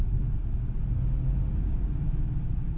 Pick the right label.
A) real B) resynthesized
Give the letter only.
A